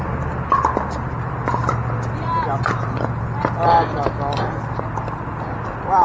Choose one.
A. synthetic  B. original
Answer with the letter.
B